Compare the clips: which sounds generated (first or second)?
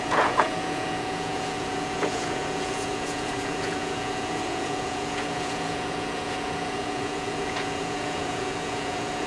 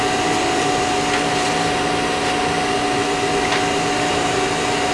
first